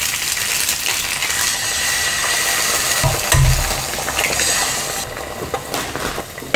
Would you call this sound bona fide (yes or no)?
yes